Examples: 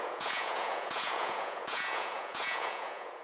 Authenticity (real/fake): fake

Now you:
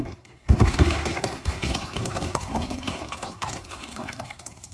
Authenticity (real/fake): fake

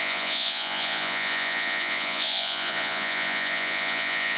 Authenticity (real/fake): fake